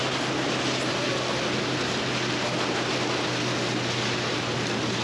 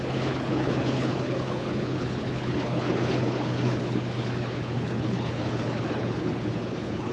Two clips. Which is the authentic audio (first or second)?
first